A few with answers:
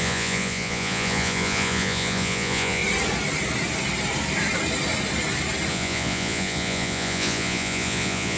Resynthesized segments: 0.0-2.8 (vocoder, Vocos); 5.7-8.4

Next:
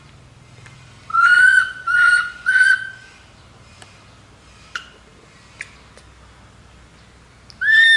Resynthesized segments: 1.1-2.7 (vocoder, Vocos)

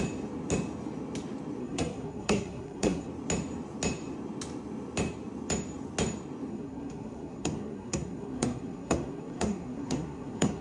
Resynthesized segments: 1.6-3.1 (codec, SNAC); 6.5-10.6

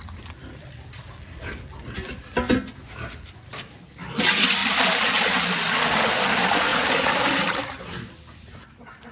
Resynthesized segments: 4.6-5.2 (vocoder, BigVGAN v2); 6.7-7.6